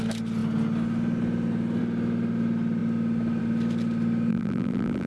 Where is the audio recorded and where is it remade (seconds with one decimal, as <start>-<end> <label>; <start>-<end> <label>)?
0.0-4.3 recorded; 4.3-5.1 remade